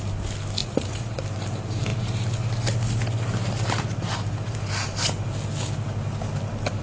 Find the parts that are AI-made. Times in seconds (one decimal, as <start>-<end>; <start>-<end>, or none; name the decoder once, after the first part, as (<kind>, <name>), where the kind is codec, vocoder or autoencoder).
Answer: 0.6-1.2 (vocoder, Vocos)